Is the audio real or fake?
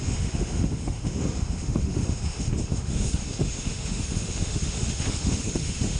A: fake